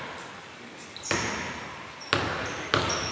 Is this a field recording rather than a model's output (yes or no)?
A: yes